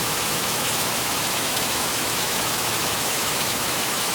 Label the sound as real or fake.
fake